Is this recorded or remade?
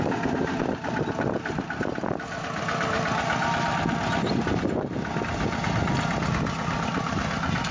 recorded